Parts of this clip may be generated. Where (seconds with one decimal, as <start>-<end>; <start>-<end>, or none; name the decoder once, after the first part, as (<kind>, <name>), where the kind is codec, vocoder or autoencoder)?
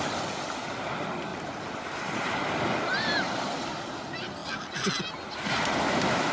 1.3-3.5 (vocoder, BigVGAN v2)